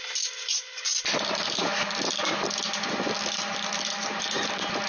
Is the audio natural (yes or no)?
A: yes